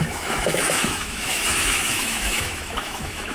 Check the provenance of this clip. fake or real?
fake